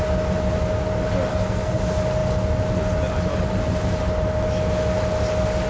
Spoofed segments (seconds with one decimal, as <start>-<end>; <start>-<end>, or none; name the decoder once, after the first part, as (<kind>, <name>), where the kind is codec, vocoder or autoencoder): 1.3-1.8 (codec, SNAC)